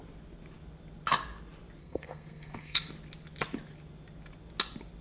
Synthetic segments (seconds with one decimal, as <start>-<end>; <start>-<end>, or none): 1.8-2.9